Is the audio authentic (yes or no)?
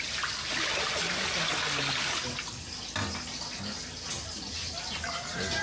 yes